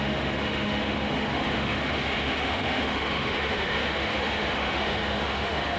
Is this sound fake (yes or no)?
yes